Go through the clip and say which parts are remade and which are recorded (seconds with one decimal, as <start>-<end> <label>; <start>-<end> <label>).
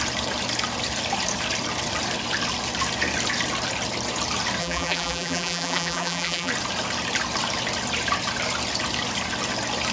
0.0-4.6 recorded; 4.6-6.5 remade; 6.5-9.9 recorded